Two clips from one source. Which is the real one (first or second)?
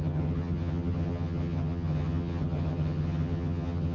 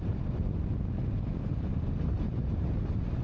second